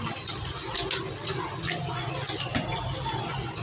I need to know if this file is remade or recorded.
recorded